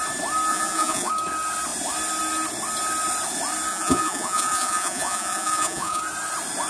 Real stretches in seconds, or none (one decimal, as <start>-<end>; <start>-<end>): 0.0-0.5; 1.1-3.7; 6.0-6.7